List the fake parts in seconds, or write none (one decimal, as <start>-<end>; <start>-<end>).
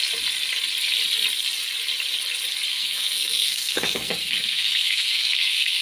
2.7-5.8